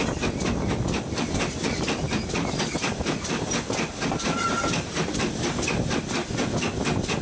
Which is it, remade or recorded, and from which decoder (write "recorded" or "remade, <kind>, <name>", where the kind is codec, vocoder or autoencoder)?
recorded